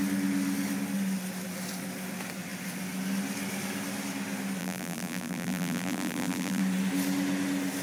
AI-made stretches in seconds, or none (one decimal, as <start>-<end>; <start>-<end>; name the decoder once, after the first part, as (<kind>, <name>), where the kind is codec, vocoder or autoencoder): 4.6-6.6 (vocoder, BigVGAN v2)